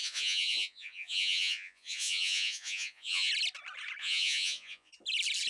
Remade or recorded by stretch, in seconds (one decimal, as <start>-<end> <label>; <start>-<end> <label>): 0.0-3.3 remade; 3.3-4.0 recorded; 4.0-4.9 remade; 4.9-5.5 recorded